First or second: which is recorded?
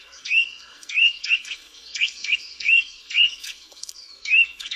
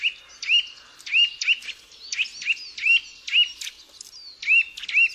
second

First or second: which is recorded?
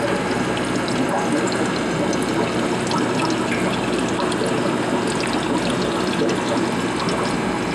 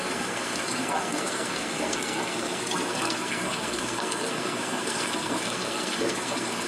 first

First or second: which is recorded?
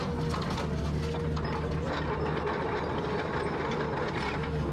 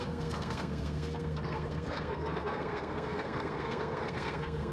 first